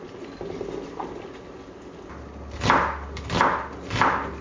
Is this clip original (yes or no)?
yes